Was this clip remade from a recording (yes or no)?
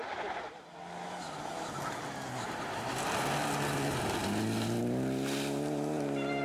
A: no